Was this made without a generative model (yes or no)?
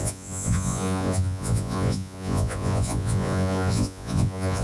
no